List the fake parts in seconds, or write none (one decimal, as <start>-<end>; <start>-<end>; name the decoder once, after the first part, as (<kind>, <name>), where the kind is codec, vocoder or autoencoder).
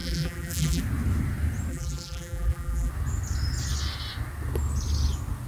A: 0.0-0.8 (vocoder, BigVGAN v2); 1.7-2.9